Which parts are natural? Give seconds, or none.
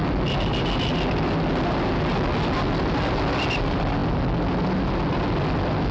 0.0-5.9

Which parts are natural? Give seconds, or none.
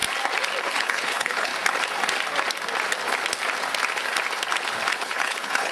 0.0-0.6; 1.5-4.9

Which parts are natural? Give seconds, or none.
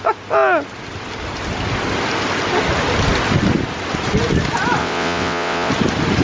0.0-4.8; 5.7-6.2